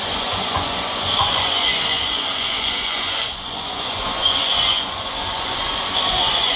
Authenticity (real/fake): fake